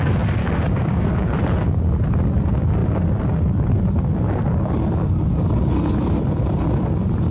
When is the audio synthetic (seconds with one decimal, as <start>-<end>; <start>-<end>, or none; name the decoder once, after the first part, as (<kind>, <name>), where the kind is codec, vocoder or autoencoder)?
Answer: 0.4-1.9 (codec, DAC)

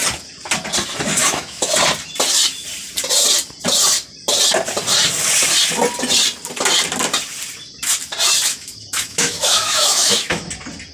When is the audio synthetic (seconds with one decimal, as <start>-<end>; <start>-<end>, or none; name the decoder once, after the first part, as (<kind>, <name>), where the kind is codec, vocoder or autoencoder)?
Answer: 1.2-1.7 (autoencoder, DAC-VAE); 8.5-10.5

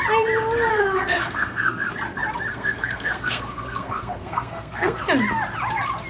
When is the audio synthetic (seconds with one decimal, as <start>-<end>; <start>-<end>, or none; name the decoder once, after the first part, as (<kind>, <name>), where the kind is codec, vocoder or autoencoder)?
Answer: 0.7-1.9 (codec, SNAC); 2.5-5.0

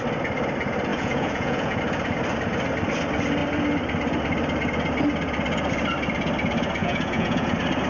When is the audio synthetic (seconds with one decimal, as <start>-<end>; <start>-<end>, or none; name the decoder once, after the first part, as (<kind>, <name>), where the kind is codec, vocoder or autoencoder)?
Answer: 0.9-1.8 (vocoder, Vocos); 6.8-7.5

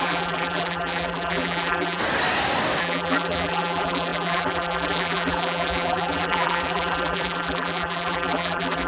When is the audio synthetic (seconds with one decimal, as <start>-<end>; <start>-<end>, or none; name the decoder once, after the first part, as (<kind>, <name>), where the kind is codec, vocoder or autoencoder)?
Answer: 0.0-2.0 (vocoder, BigVGAN v2); 2.8-8.9

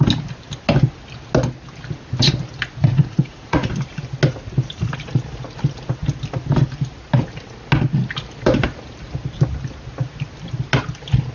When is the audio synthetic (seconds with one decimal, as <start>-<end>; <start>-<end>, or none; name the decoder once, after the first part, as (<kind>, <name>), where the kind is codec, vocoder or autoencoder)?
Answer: 2.8-3.7 (vocoder, Vocos)